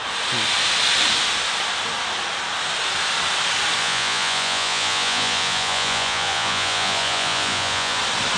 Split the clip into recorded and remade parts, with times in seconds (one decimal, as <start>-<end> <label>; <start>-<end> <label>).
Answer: 0.0-3.8 recorded; 3.8-8.0 remade; 8.0-8.4 recorded

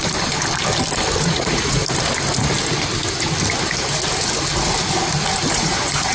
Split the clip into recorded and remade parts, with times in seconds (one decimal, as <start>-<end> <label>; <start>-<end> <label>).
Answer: 0.0-1.2 recorded; 1.2-1.8 remade; 1.8-5.5 recorded; 5.5-6.1 remade

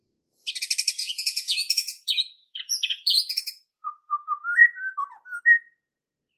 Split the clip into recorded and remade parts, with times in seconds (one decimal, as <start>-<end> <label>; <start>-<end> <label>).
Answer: 0.0-1.0 recorded; 1.0-4.8 remade; 4.8-6.4 recorded

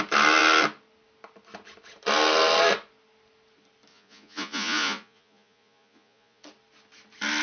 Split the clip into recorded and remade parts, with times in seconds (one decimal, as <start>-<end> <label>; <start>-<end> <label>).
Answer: 0.0-3.9 recorded; 3.9-6.4 remade; 6.4-7.4 recorded

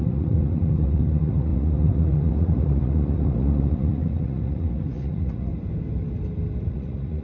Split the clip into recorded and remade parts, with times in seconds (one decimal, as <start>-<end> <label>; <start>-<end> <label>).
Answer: 0.0-5.5 remade; 5.5-6.6 recorded; 6.6-7.2 remade